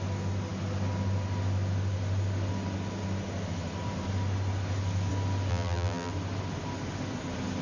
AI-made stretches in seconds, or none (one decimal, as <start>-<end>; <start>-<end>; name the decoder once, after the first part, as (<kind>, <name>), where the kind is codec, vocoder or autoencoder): 5.5-6.1 (vocoder, BigVGAN v2)